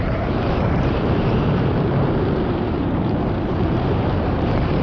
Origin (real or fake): fake